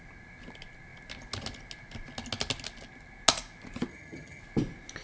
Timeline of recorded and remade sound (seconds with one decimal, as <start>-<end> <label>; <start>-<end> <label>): 0.0-3.9 recorded; 3.9-4.4 remade; 4.4-5.0 recorded